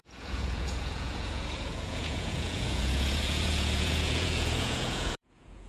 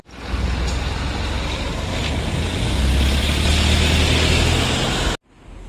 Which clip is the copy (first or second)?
first